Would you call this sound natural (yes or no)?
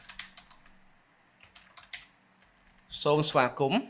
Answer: yes